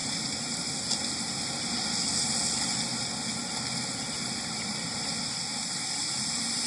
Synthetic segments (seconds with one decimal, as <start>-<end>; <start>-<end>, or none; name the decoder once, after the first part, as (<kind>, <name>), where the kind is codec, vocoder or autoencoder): none